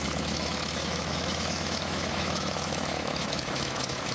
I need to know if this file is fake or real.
fake